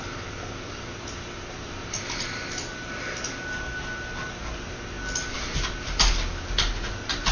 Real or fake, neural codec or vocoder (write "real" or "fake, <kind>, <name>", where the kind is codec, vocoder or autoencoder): real